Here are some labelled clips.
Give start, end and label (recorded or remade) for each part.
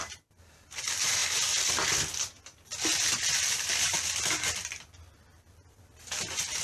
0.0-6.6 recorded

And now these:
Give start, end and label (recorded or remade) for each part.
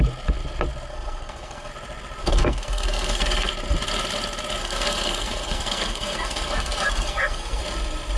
0.0-0.9 recorded; 0.9-1.7 remade; 1.7-2.2 recorded; 2.2-3.5 remade; 3.5-4.6 recorded; 4.6-7.6 remade; 7.6-8.2 recorded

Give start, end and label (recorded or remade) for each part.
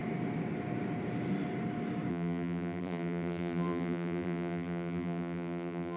0.0-2.1 recorded; 2.1-6.0 remade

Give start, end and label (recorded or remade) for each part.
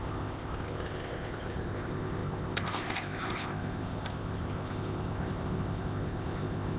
0.0-6.8 remade